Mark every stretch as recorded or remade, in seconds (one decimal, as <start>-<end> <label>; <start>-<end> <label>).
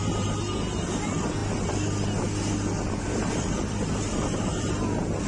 0.0-5.3 recorded